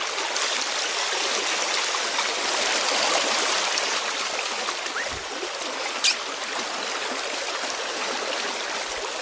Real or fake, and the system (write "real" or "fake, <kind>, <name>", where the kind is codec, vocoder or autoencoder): real